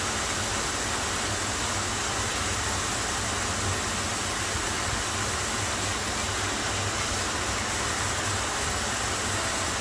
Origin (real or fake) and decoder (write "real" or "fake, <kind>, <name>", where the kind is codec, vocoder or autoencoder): real